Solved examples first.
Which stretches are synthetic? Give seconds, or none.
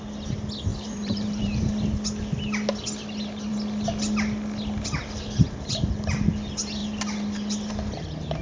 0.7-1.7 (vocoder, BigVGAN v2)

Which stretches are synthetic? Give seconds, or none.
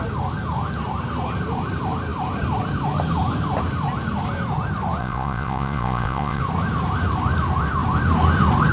5.0-6.4 (vocoder, Vocos)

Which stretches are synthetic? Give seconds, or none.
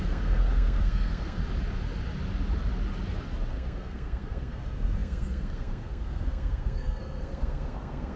0.0-1.4 (codec, SNAC); 3.5-8.2